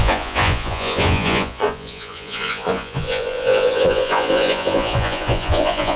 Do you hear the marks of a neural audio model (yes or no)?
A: yes